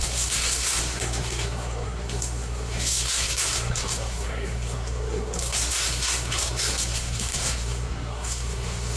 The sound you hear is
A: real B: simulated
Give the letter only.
B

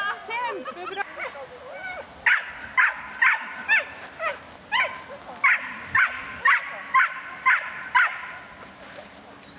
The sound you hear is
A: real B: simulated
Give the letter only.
A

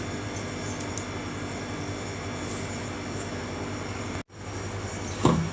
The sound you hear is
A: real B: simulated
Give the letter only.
A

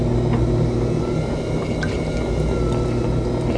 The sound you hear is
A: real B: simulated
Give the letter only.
A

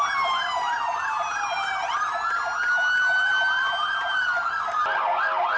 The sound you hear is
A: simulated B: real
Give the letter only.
B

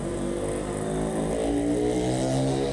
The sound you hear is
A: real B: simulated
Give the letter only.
A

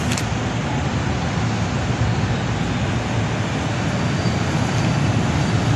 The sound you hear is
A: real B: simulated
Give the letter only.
A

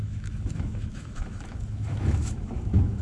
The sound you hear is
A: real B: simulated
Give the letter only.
B